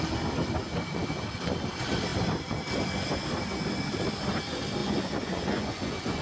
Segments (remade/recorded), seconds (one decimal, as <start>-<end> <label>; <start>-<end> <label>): 0.0-4.8 recorded; 4.8-6.2 remade